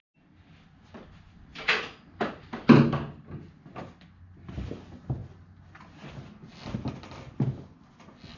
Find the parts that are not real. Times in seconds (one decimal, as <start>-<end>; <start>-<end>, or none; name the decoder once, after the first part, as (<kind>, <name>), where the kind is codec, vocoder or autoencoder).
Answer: none